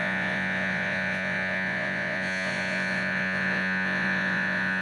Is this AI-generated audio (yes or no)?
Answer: yes